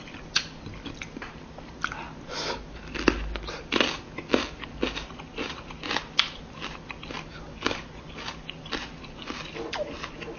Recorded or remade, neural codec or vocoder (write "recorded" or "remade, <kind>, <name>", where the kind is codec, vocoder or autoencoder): recorded